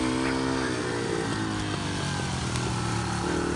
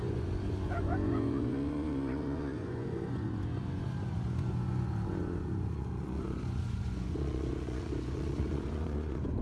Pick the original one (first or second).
first